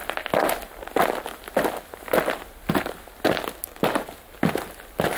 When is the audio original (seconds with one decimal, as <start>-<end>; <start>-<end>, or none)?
0.0-5.2